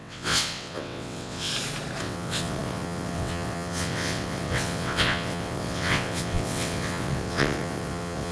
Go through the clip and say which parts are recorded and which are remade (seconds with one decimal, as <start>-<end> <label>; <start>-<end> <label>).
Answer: 0.0-1.5 remade; 1.5-2.0 recorded; 2.0-8.3 remade